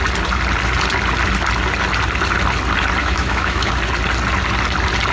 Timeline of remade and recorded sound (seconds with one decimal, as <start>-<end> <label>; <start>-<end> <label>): 0.0-3.0 recorded; 3.0-3.7 remade; 3.7-5.1 recorded